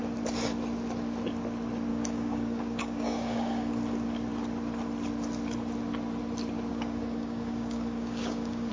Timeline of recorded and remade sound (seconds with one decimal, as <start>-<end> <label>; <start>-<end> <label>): 0.0-1.9 recorded; 1.9-3.7 remade; 3.7-6.7 recorded; 6.7-8.7 remade